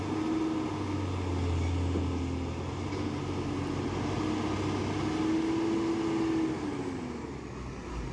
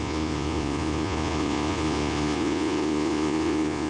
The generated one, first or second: second